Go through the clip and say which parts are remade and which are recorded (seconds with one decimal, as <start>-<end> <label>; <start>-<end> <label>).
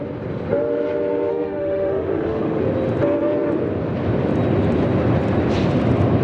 0.0-1.3 recorded; 1.3-2.6 remade; 2.6-6.2 recorded